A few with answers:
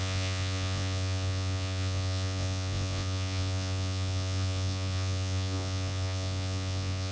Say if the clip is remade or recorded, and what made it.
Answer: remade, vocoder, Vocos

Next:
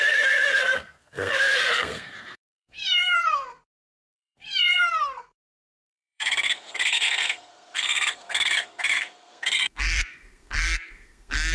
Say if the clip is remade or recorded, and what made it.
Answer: remade, codec, SNAC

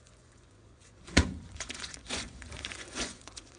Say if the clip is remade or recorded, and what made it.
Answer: remade, vocoder, Vocos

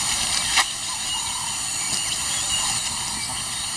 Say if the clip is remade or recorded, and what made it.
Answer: recorded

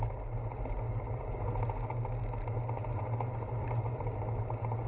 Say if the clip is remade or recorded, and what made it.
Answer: recorded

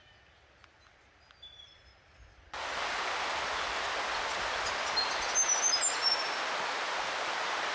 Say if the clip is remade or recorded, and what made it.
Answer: recorded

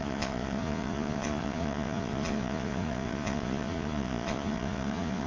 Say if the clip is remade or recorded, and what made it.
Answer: remade, vocoder, Vocos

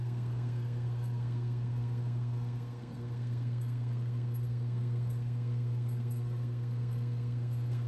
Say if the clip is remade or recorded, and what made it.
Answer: remade, codec, SNAC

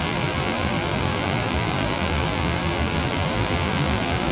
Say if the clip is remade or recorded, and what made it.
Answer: remade, vocoder, BigVGAN v2